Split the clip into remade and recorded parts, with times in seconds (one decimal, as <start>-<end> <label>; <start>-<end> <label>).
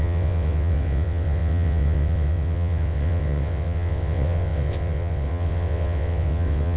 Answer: 0.0-6.8 remade